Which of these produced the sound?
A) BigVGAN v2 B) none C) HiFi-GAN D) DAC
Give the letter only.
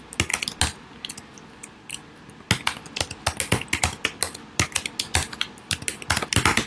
B